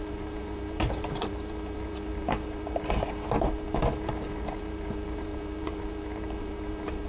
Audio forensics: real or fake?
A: fake